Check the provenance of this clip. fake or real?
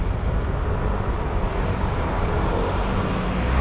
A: real